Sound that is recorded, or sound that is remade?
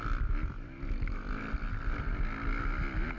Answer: recorded